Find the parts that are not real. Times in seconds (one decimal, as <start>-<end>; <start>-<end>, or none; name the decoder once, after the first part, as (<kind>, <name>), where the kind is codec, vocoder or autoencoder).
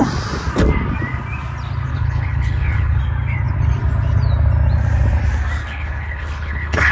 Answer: 1.9-3.0 (codec, HILCodec); 5.6-6.9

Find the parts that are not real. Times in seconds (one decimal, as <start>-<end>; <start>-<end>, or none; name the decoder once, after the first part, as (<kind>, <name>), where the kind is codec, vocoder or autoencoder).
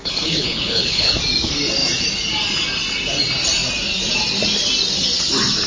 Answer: 0.0-1.2 (codec, HILCodec)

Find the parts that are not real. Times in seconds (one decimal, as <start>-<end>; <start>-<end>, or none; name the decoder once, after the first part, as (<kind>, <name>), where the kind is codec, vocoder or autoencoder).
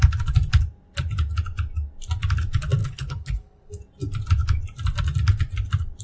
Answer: 2.8-3.7 (codec, HILCodec)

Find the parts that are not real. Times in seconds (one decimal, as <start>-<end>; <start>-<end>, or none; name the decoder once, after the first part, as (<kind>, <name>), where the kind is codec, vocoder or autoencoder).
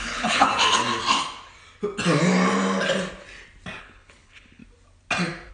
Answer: 0.0-0.5 (codec, HILCodec); 3.8-4.6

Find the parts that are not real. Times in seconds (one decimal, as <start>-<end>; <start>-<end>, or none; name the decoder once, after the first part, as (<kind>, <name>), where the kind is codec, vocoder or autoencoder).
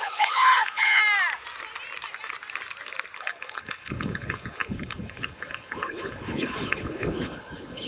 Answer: 0.0-1.0 (codec, HILCodec); 3.2-7.9